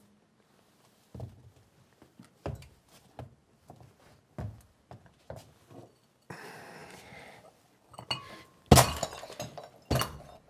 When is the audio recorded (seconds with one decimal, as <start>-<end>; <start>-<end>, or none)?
0.0-10.5